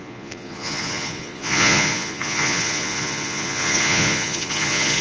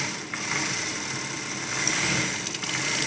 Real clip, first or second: second